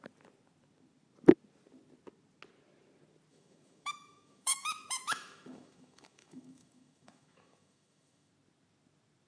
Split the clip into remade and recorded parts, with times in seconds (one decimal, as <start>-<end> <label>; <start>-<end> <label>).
0.0-3.3 recorded; 3.3-8.3 remade; 8.3-9.3 recorded